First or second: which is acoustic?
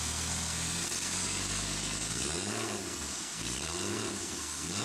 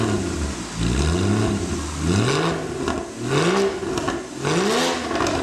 second